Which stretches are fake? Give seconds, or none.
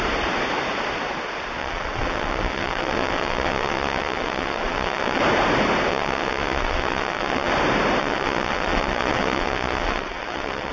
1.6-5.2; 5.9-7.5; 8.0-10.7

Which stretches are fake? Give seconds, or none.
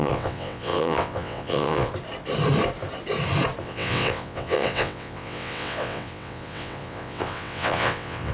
0.0-1.9; 3.6-8.3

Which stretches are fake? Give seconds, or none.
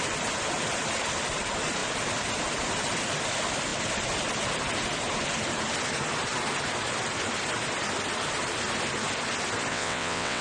9.7-10.4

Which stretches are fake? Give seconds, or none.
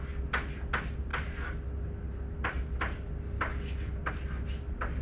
none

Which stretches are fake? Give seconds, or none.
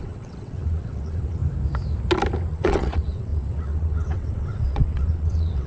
0.0-1.4; 2.5-5.7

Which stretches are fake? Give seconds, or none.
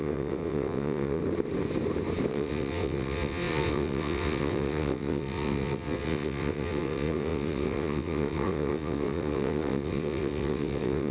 0.0-1.2; 2.3-11.1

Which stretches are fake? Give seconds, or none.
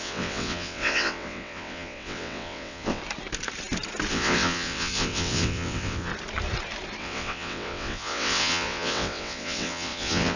0.0-3.0; 4.1-6.1; 7.0-10.4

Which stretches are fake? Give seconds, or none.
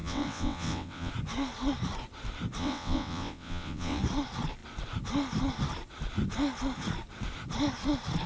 0.0-1.1; 2.6-4.0